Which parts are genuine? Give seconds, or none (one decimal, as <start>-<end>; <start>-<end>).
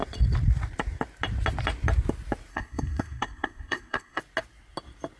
0.0-2.5; 4.2-5.2